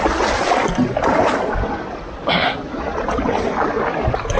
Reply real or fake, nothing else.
real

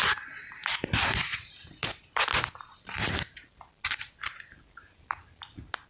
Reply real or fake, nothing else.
real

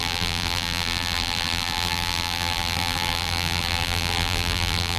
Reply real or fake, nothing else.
fake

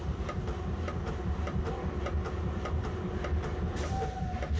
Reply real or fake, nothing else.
fake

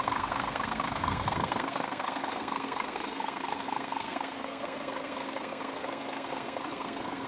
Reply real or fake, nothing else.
fake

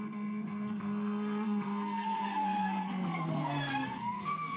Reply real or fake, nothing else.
fake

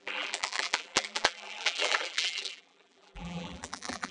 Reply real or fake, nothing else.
fake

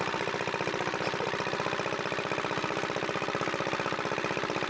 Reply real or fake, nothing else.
real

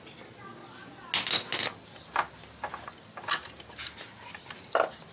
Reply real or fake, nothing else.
real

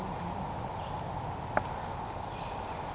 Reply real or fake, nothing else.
real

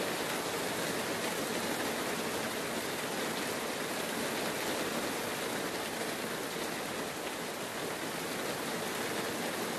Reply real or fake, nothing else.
real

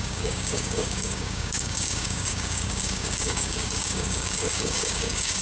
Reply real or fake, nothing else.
fake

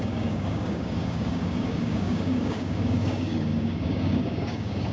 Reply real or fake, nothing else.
fake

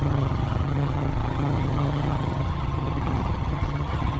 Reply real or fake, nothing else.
fake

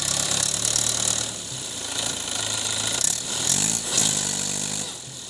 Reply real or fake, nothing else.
real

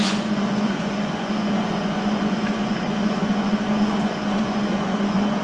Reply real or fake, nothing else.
fake